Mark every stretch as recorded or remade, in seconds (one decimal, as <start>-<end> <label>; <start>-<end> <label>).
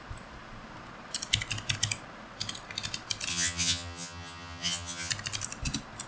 0.0-3.3 recorded; 3.3-5.1 remade; 5.1-6.1 recorded